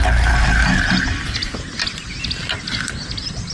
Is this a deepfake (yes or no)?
no